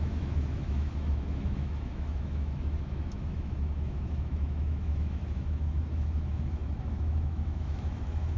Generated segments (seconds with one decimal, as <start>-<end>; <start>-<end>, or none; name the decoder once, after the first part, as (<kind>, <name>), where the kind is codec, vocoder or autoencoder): 0.0-8.4 (autoencoder, DAC-VAE)